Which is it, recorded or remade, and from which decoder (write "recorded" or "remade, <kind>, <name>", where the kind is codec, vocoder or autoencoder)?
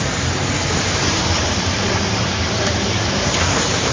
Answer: remade, vocoder, BigVGAN v2